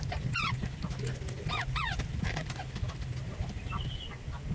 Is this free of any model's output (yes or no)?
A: yes